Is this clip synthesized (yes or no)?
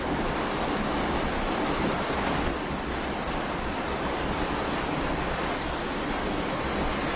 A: no